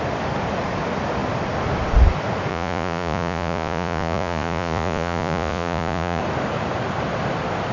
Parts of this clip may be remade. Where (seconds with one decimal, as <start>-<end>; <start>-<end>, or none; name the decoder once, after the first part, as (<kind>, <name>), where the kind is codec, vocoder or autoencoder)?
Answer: 2.5-6.2 (vocoder, Vocos)